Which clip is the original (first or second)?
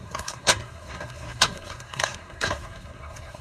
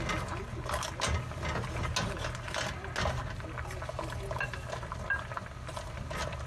second